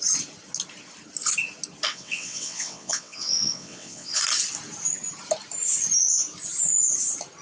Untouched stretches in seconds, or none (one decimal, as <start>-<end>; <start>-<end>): 0.0-1.9; 4.2-7.4

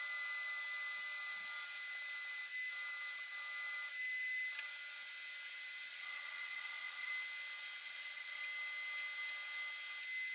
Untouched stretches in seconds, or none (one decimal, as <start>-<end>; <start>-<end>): 0.0-5.9; 7.1-7.8; 8.4-10.3